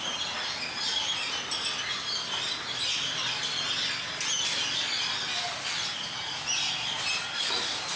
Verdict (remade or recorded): recorded